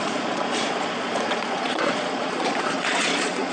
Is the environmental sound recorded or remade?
remade